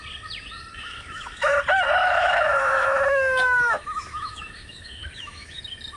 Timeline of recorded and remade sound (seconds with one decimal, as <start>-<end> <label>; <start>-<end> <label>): 0.0-0.7 recorded; 0.7-1.6 remade; 1.6-2.0 recorded; 2.0-5.6 remade; 5.6-6.0 recorded

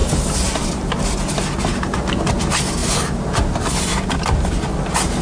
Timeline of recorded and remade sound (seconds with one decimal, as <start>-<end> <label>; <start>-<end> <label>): 0.0-5.2 recorded

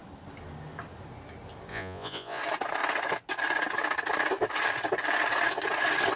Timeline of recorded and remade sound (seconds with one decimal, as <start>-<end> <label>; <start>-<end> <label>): 0.0-1.7 recorded; 1.7-2.4 remade; 2.4-6.2 recorded

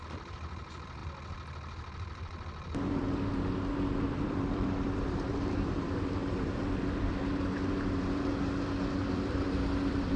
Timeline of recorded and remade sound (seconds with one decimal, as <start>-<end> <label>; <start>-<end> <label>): 0.0-1.0 remade; 1.0-4.1 recorded; 4.1-6.2 remade; 6.2-9.1 recorded; 9.1-10.2 remade

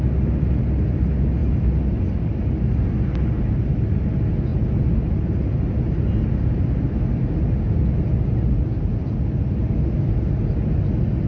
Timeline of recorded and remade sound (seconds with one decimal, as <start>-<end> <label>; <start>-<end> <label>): 0.0-11.3 recorded